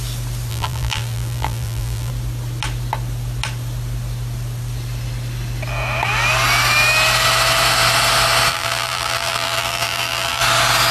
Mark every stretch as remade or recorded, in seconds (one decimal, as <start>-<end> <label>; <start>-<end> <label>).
0.0-0.5 recorded; 0.5-2.1 remade; 2.1-8.5 recorded; 8.5-10.4 remade; 10.4-10.9 recorded